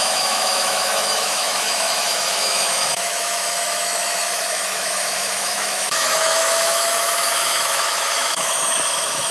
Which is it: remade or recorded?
remade